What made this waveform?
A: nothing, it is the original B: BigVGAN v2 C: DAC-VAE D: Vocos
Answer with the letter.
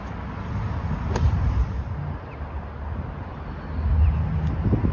A